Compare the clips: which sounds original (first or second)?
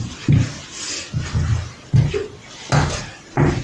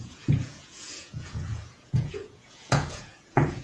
first